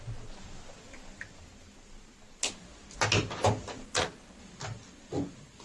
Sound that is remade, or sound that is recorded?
recorded